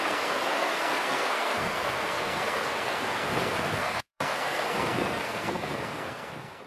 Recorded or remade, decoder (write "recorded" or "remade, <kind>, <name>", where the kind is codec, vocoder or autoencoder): remade, codec, SNAC